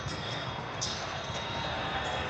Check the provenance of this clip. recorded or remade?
remade